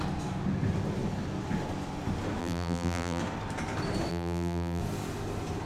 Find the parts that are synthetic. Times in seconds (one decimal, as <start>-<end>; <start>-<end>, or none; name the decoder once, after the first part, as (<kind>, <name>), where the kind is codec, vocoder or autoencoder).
2.4-3.2 (vocoder, BigVGAN v2); 4.1-4.8